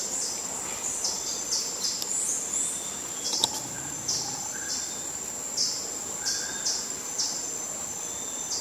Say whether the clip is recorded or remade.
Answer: recorded